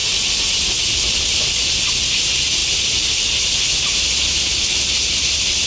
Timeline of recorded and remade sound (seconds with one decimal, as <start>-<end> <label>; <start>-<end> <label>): 0.0-5.7 recorded